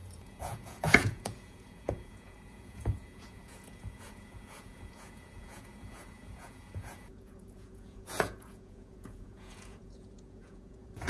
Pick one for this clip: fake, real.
fake